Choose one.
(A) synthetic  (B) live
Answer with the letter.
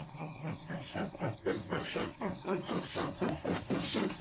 A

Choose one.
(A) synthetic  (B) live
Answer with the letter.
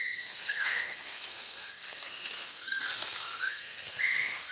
A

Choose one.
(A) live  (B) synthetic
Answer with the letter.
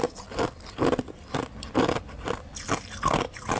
A